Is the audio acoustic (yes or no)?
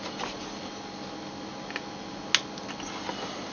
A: yes